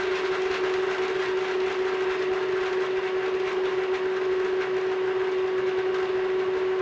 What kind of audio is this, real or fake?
real